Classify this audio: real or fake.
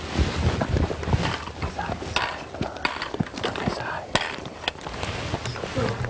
real